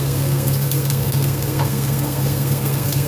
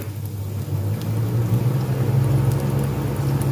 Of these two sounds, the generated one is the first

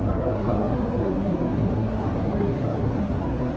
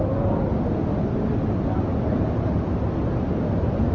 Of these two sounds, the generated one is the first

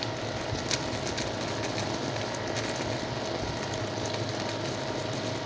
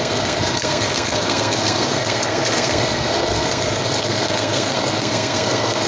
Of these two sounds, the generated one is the second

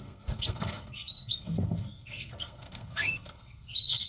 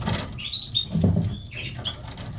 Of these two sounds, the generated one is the first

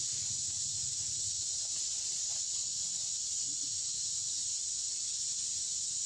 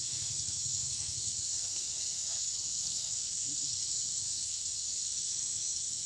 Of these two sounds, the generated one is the second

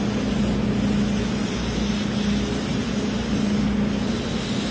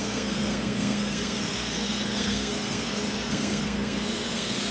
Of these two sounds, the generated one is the second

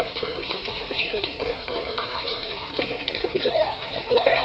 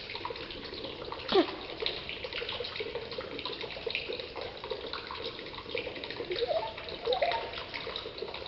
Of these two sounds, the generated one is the first